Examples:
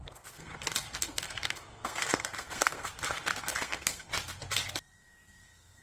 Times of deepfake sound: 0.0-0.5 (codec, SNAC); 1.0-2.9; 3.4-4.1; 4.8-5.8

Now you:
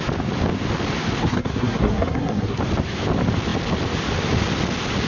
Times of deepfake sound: 1.2-2.6 (codec, SNAC)

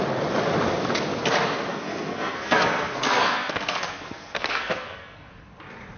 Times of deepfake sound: 1.7-5.3 (codec, SNAC)

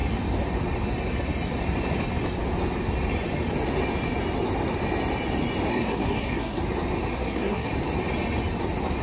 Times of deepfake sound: 5.7-6.6 (codec, SNAC); 7.1-7.7